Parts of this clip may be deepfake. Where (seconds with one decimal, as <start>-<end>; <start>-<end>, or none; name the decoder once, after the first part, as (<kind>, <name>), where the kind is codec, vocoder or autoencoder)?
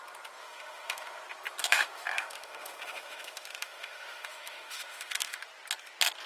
0.4-1.2 (autoencoder, DAC-VAE); 1.6-5.4